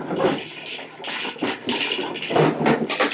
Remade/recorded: recorded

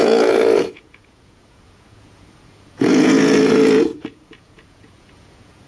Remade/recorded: remade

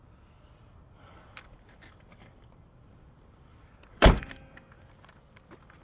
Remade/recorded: recorded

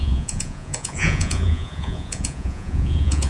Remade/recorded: remade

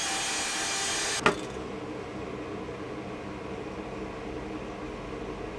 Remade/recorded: recorded